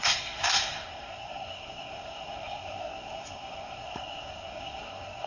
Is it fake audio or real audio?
fake